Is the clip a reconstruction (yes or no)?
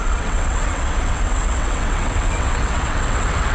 yes